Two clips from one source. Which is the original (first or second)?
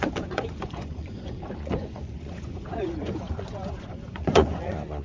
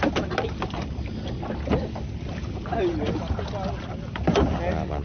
second